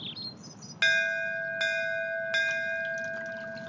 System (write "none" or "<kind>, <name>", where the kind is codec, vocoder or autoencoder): none